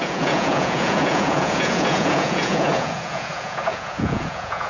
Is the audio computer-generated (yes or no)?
yes